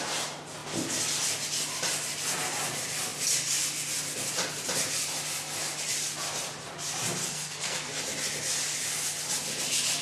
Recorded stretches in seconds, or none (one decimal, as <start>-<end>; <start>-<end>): 0.0-7.2; 8.0-10.0